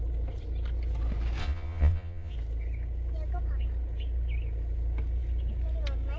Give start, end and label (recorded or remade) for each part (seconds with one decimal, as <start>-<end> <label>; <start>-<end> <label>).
0.0-1.4 recorded; 1.4-2.3 remade; 2.3-6.2 recorded